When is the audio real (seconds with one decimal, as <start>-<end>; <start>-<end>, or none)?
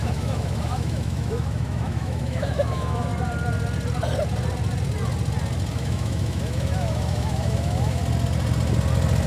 3.1-5.7; 8.0-9.3